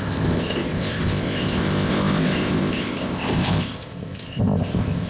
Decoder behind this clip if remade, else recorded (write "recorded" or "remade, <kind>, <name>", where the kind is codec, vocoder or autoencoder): remade, codec, ZipCodec